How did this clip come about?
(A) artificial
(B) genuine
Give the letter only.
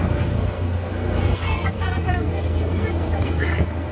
A